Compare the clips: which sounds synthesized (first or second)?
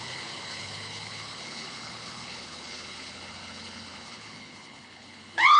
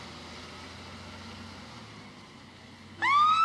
first